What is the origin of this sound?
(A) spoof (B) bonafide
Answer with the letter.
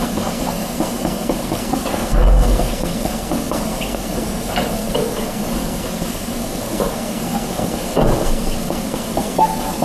A